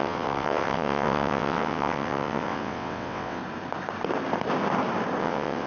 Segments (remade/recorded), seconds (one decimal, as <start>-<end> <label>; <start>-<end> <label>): 0.0-3.4 remade; 3.4-5.2 recorded; 5.2-5.7 remade